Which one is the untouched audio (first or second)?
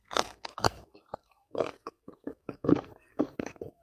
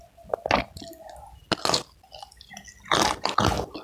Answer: second